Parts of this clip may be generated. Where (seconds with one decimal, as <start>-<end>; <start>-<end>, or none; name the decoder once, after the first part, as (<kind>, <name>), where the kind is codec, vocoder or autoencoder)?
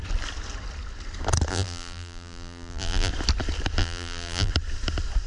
1.5-3.1 (vocoder, BigVGAN v2); 3.8-4.5